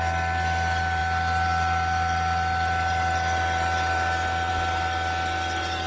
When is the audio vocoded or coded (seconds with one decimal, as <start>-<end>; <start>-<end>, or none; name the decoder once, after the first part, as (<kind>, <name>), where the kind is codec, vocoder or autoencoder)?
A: none